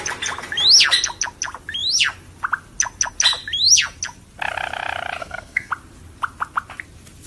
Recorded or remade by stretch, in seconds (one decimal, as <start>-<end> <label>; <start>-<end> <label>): 0.0-5.2 recorded; 5.2-5.7 remade; 5.7-7.3 recorded